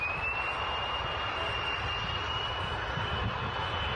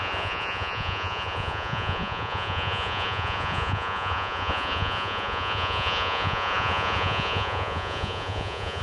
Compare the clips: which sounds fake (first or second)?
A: second